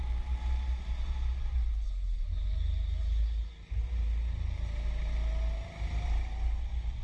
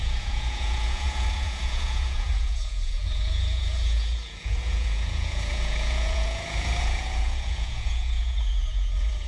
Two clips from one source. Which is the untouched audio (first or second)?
first